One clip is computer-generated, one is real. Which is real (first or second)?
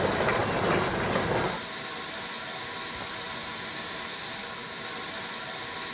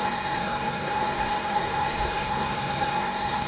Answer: first